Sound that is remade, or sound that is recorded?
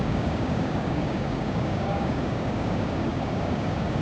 remade